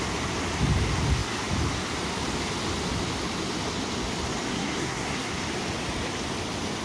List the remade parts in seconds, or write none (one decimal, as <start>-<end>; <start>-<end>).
4.5-5.4